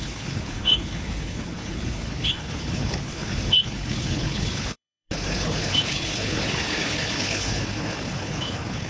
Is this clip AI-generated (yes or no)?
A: yes